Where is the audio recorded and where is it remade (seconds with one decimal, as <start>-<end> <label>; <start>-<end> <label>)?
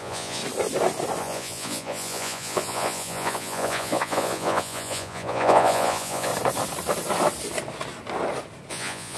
0.0-0.4 remade; 0.4-1.2 recorded; 1.2-6.3 remade; 6.3-8.7 recorded; 8.7-9.2 remade